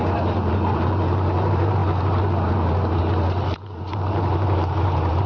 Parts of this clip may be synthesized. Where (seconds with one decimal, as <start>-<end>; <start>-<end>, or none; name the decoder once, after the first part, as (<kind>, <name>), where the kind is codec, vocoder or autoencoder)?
0.0-1.8 (vocoder, BigVGAN v2); 3.0-5.3